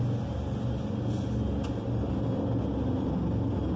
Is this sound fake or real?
real